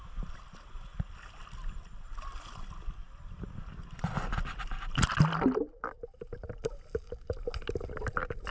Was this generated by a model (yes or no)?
no